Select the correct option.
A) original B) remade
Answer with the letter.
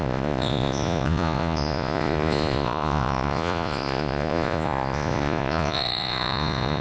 B